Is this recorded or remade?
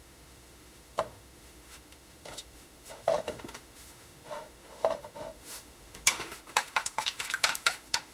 remade